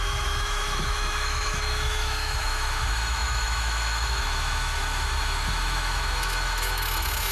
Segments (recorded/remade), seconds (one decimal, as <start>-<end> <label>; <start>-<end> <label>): 0.0-7.3 remade